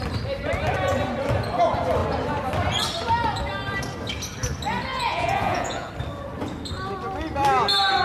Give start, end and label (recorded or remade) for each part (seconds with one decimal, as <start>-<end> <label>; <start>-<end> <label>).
0.0-4.9 recorded; 4.9-5.9 remade; 5.9-8.0 recorded